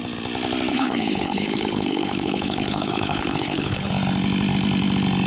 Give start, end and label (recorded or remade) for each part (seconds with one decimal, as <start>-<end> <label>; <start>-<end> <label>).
0.0-0.7 recorded; 0.7-3.9 remade; 3.9-5.3 recorded